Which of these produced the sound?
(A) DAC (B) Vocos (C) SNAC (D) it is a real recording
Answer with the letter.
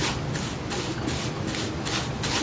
D